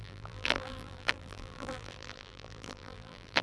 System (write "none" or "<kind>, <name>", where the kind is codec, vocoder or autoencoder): vocoder, BigVGAN v2